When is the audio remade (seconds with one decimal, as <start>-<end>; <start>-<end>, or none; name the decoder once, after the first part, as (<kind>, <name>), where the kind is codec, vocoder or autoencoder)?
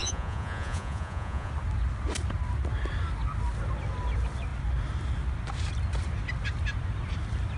0.0-1.5 (vocoder, Vocos)